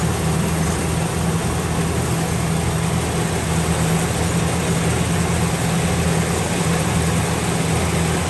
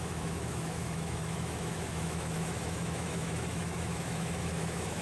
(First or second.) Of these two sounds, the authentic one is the first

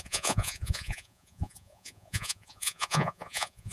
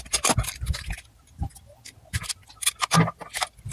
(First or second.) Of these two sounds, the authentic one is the second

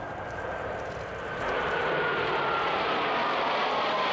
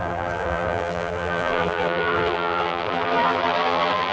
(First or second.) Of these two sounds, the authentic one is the first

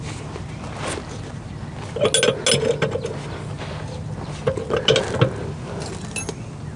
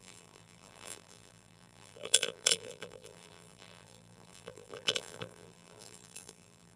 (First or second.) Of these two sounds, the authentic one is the first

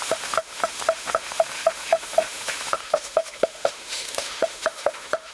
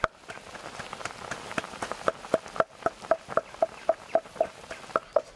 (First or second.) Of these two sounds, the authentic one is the second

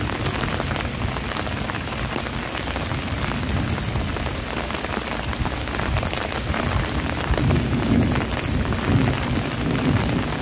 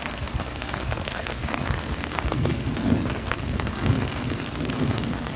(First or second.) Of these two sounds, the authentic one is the first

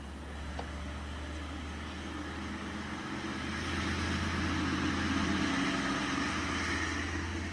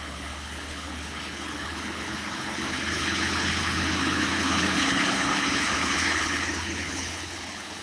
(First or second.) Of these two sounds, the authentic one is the first